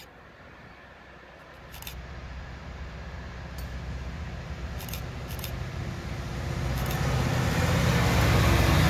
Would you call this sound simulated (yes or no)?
no